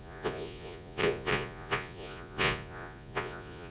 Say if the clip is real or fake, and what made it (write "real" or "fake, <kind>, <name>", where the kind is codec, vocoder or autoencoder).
fake, vocoder, Vocos